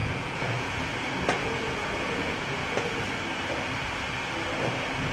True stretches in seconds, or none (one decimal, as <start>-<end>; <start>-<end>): 0.8-1.4; 3.0-5.1

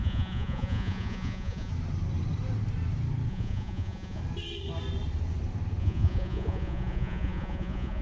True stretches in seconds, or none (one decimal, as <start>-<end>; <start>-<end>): 1.7-3.3; 4.2-5.8

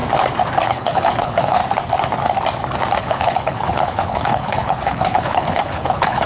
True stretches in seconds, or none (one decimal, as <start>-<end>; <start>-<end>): 0.0-0.6; 1.6-3.0

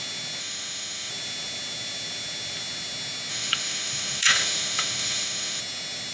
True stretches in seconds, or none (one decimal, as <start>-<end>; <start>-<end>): 0.0-0.4; 1.1-3.3; 5.6-6.1

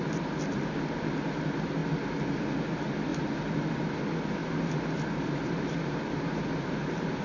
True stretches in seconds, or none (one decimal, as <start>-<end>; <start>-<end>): 0.0-3.1; 3.7-4.4

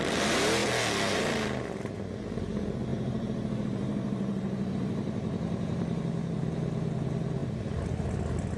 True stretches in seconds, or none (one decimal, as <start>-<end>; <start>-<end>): 0.0-2.9; 6.0-8.6

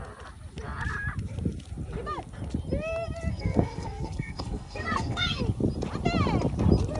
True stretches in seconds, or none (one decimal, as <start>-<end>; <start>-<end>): 0.0-3.3; 5.4-7.0